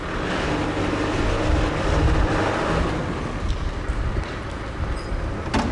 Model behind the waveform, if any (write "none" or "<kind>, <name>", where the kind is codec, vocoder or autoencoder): none